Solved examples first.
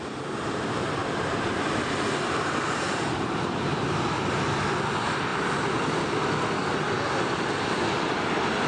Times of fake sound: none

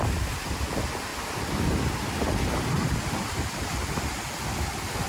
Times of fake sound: 1.1-4.2